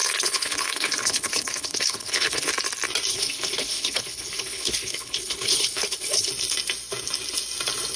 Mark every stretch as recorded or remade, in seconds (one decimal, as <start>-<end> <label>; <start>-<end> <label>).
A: 0.0-2.5 remade; 2.5-3.1 recorded; 3.1-6.3 remade; 6.3-8.0 recorded